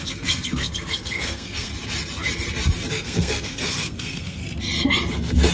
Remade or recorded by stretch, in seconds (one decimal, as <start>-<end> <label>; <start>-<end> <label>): 0.0-1.7 remade; 1.7-2.9 recorded; 2.9-4.4 remade; 4.4-5.1 recorded; 5.1-5.5 remade